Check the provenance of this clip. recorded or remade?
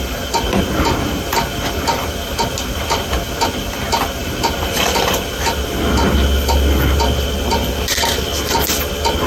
recorded